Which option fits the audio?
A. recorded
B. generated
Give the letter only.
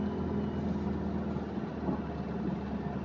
A